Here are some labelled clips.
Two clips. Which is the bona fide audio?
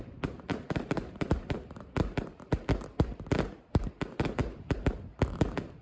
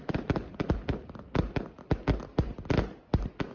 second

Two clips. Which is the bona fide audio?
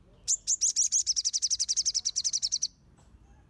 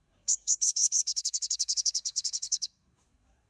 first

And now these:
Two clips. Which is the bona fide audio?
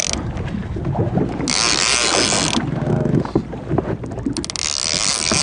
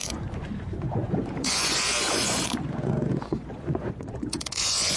first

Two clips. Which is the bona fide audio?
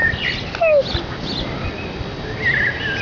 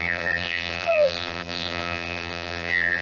first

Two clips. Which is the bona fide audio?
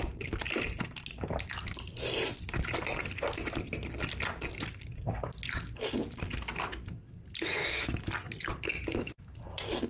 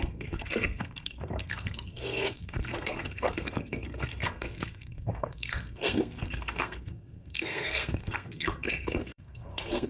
first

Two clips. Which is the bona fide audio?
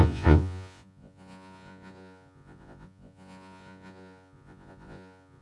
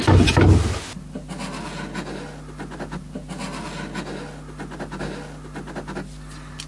second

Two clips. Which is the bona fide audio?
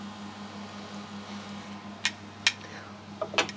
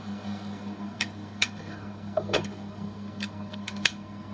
first